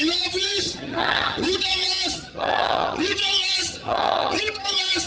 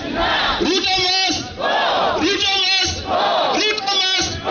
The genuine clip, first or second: second